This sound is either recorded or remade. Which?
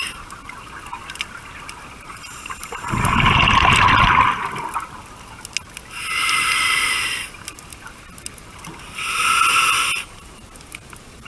recorded